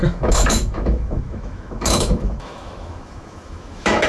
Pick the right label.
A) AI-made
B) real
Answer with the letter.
A